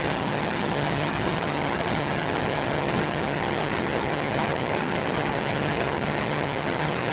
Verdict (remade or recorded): remade